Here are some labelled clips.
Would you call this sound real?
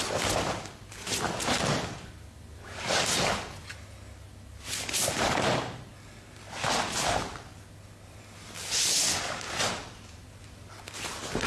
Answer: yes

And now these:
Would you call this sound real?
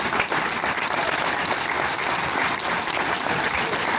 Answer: yes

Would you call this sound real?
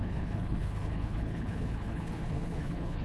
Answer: no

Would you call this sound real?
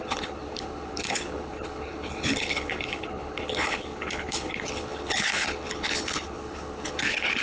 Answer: no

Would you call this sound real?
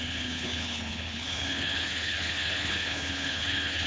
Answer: no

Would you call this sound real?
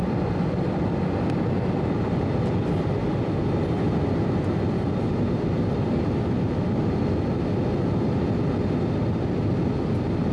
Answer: yes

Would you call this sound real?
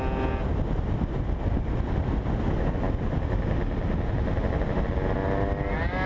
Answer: yes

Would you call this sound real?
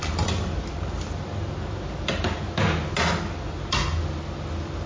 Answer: yes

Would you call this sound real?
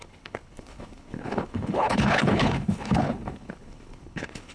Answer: no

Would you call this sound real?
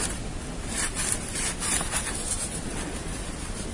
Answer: yes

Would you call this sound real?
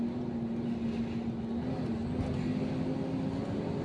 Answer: yes